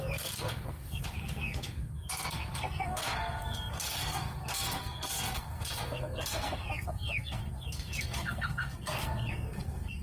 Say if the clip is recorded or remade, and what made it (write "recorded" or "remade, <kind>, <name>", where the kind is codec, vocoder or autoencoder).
remade, codec, SNAC